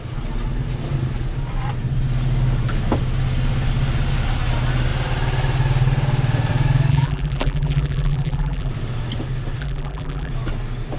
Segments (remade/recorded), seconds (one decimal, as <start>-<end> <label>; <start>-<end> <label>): 0.0-6.9 recorded; 6.9-8.7 remade; 8.7-9.6 recorded; 9.6-10.3 remade; 10.3-11.0 recorded